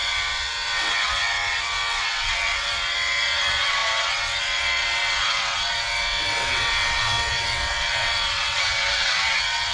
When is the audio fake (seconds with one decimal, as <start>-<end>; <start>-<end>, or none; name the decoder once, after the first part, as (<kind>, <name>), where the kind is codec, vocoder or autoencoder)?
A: 0.0-9.7 (vocoder, WaveNeXt)